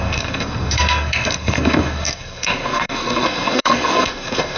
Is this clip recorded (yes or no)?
no